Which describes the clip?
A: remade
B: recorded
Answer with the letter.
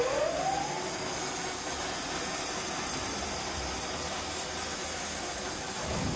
B